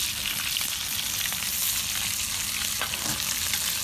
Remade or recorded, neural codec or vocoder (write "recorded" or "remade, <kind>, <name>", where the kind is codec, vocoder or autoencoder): recorded